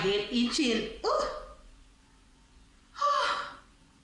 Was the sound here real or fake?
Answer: fake